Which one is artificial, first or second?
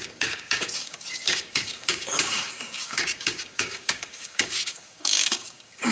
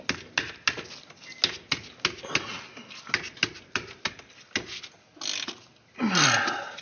first